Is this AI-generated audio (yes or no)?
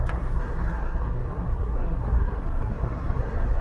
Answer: yes